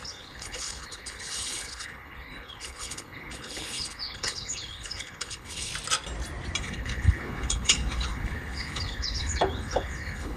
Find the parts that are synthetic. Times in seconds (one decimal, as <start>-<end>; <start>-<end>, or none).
0.0-5.7; 6.6-10.4